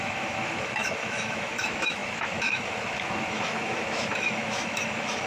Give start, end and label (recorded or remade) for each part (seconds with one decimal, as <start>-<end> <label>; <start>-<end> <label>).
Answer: 0.0-5.3 remade

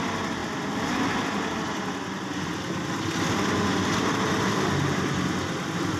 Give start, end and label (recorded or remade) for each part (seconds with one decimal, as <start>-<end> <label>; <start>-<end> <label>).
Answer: 0.0-6.0 recorded

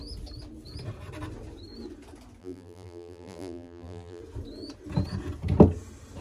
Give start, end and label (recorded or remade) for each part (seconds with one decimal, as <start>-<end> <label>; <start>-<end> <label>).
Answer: 0.0-2.4 recorded; 2.4-4.2 remade; 4.2-6.2 recorded

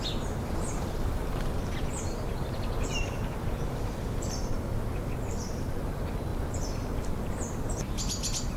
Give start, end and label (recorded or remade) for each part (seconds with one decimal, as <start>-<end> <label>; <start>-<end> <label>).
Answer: 0.0-0.4 recorded; 0.4-4.5 remade; 4.5-8.6 recorded

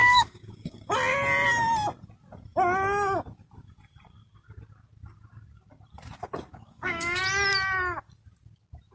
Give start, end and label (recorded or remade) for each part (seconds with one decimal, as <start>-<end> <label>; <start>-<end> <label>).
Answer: 0.0-0.9 remade; 0.9-6.5 recorded; 6.5-7.2 remade; 7.2-8.9 recorded

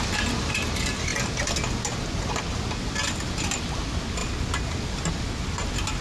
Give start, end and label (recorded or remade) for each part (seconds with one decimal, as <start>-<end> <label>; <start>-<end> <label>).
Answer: 0.0-6.0 recorded